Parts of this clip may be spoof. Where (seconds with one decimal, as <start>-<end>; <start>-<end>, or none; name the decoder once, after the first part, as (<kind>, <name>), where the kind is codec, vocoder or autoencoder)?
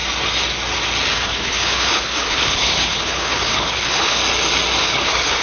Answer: 1.1-4.2 (codec, HILCodec); 4.8-5.4